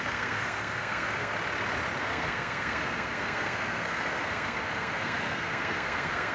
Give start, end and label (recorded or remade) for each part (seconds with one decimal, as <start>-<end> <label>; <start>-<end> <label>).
0.0-1.3 remade; 1.3-2.0 recorded; 2.0-6.3 remade